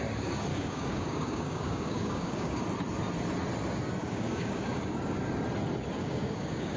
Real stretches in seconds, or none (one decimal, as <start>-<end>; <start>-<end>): 0.0-0.5; 2.6-4.0; 5.2-6.0